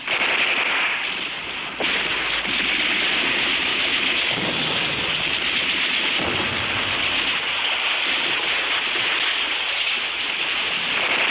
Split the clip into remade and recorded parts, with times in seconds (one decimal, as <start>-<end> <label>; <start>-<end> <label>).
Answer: 0.0-3.7 recorded; 3.7-5.0 remade; 5.0-11.3 recorded